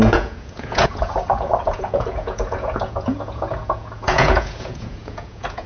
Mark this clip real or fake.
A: fake